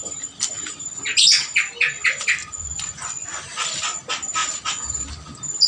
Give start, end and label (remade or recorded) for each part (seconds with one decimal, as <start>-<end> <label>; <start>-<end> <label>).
0.0-2.4 recorded; 2.4-3.4 remade; 3.4-5.7 recorded